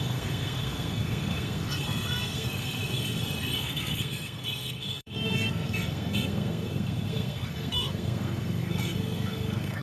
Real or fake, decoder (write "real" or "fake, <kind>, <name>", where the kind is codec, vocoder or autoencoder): fake, codec, SNAC